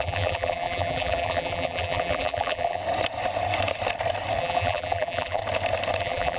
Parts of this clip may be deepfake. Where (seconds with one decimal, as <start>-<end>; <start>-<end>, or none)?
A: 0.0-2.8; 4.4-5.4; 6.0-6.4